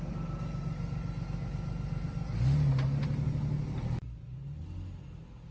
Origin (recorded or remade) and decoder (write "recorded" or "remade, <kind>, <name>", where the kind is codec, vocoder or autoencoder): recorded